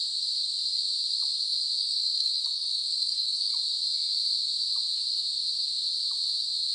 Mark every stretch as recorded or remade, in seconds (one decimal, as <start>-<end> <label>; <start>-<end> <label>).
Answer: 0.0-1.8 recorded; 1.8-3.5 remade; 3.5-6.7 recorded